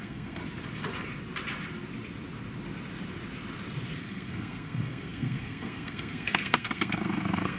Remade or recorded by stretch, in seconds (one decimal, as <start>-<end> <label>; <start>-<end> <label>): 0.0-0.4 remade; 0.4-4.0 recorded; 4.0-7.6 remade